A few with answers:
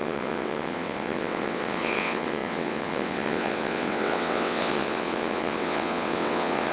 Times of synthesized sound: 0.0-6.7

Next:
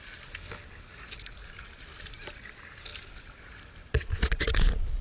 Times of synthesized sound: none

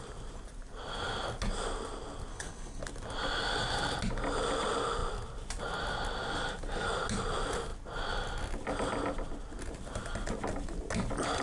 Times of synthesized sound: 2.3-2.8